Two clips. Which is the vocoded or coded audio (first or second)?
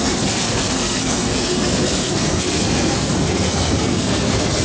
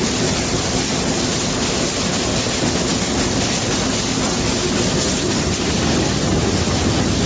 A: first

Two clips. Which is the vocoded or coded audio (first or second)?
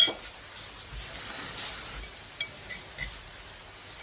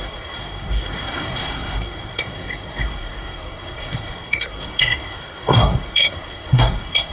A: second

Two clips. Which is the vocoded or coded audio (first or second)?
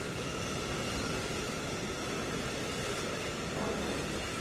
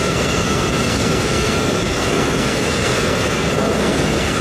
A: second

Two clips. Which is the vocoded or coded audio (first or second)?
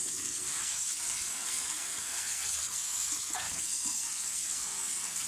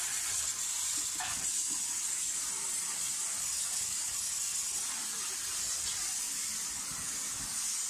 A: first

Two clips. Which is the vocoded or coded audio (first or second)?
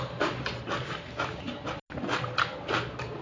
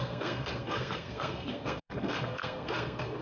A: second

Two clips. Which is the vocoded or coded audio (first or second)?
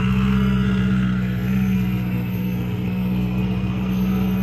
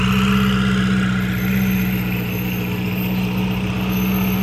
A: first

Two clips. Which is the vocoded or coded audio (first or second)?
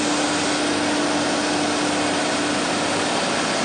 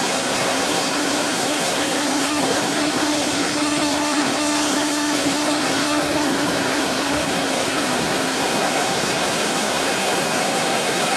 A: second